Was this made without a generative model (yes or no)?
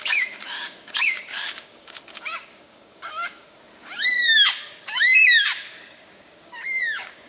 no